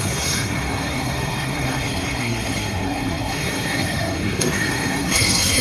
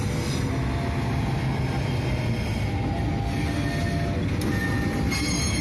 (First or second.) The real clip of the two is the second